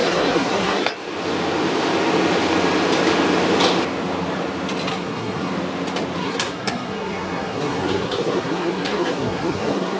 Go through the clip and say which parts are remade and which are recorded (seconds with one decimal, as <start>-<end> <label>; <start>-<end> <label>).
0.0-0.9 remade; 0.9-4.9 recorded; 4.9-5.5 remade; 5.5-6.2 recorded; 6.2-10.0 remade